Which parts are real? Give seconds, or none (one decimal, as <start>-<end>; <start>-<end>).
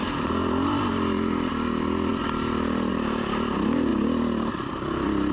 2.1-2.9; 3.9-4.5